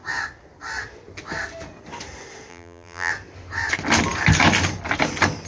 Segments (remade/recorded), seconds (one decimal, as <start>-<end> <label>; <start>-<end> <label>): 0.0-2.5 recorded; 2.5-3.1 remade; 3.1-5.5 recorded